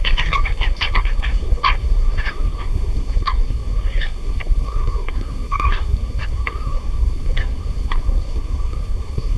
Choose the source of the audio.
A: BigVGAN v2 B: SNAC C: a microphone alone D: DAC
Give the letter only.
B